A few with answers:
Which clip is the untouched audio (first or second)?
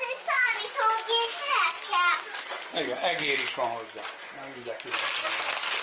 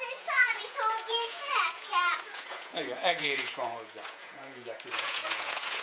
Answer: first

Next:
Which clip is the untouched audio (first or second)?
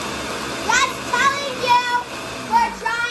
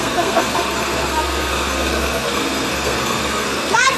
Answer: first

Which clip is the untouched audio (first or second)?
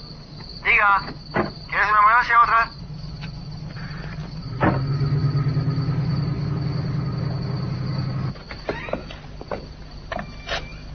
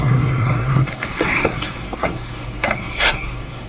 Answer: first